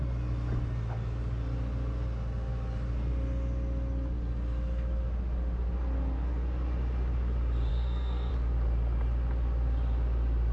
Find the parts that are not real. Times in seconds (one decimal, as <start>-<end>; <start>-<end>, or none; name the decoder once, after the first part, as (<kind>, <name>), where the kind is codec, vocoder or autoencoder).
7.7-8.3 (codec, SNAC)